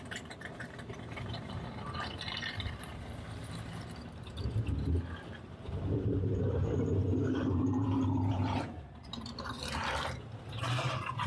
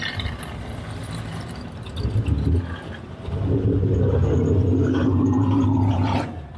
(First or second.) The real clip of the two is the second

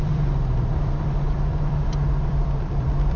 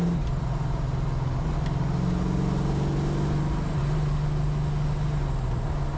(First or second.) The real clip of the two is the second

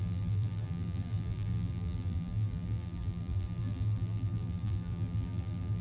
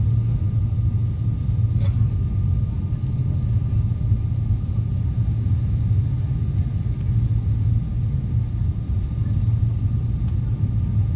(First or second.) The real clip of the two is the second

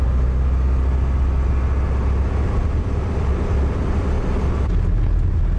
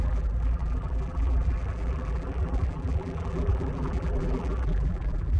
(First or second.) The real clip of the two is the first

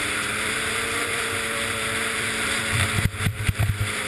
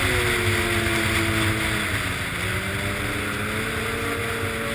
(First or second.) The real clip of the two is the second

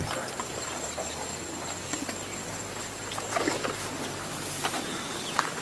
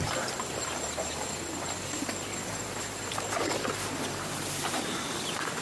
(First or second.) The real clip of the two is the first